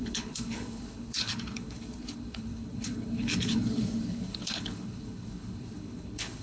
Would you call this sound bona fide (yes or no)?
no